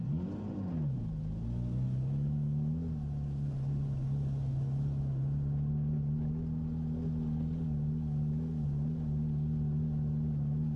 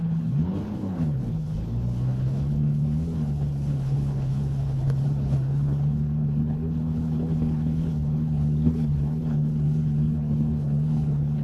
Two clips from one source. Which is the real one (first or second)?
first